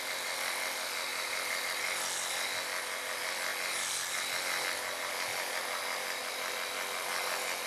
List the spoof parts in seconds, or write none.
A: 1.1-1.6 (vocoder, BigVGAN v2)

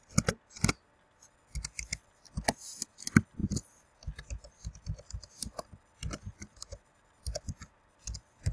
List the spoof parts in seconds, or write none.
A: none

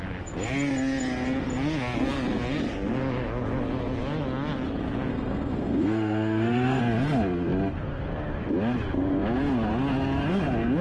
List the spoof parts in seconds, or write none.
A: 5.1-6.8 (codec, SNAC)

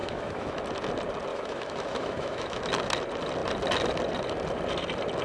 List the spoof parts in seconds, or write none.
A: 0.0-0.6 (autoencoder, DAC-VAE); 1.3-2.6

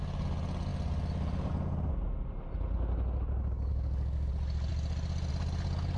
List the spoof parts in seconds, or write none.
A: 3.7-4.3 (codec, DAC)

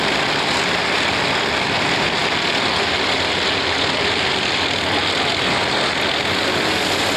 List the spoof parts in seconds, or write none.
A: none